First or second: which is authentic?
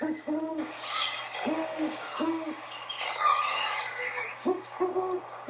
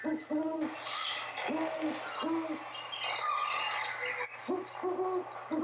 second